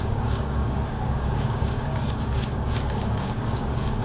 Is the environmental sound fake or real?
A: fake